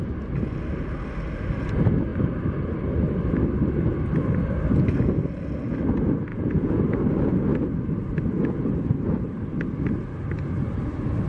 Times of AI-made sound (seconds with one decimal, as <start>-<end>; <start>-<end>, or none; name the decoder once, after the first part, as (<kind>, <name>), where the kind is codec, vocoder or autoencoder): 6.3-6.8 (vocoder, Vocos)